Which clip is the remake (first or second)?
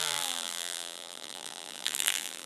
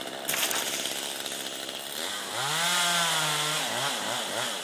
first